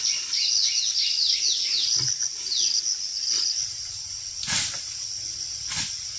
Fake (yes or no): no